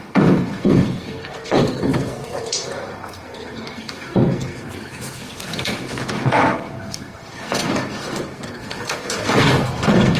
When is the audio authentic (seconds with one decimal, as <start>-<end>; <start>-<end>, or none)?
none